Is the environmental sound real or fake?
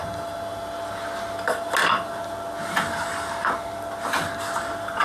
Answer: real